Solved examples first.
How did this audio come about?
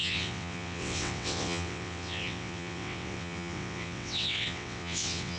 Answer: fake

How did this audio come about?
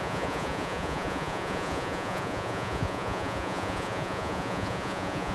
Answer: fake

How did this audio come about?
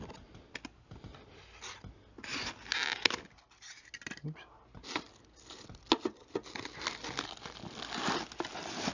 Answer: real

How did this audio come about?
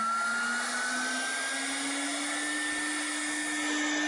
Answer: real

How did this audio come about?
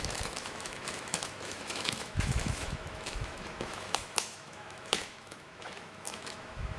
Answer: fake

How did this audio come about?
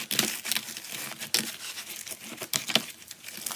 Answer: real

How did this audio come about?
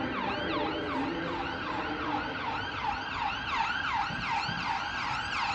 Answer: real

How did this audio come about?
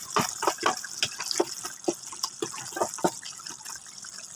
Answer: real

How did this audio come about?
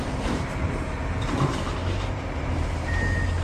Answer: fake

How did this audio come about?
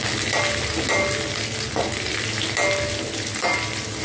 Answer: real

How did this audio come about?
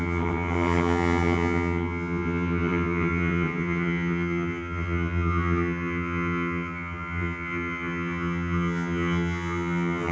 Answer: fake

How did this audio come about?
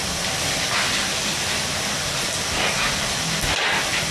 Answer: real